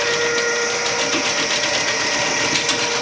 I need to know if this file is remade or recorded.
recorded